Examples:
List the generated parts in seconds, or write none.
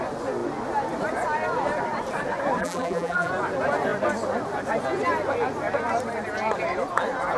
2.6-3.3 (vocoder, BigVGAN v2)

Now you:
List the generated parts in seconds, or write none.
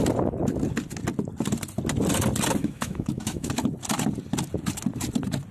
2.6-3.5 (autoencoder, DAC-VAE)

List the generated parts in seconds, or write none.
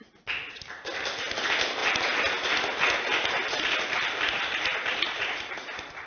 none